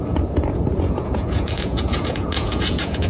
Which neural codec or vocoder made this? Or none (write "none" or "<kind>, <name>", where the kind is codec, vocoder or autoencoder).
vocoder, Vocos